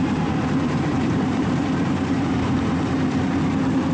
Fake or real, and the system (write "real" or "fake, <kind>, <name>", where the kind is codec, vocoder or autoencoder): fake, vocoder, BigVGAN v2